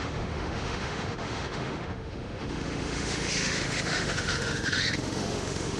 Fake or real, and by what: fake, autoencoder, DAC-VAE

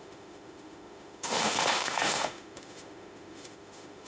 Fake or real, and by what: fake, autoencoder, DAC-VAE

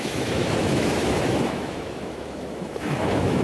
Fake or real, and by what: fake, autoencoder, DAC-VAE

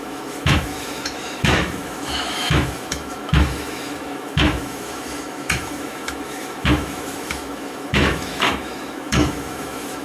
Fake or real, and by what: fake, autoencoder, DAC-VAE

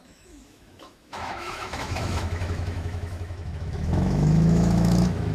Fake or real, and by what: fake, autoencoder, DAC-VAE